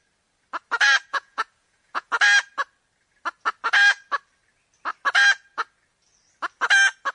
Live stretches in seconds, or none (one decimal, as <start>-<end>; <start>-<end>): 0.0-1.1; 2.1-7.1